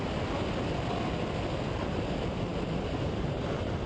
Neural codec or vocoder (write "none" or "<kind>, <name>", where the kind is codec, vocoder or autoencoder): none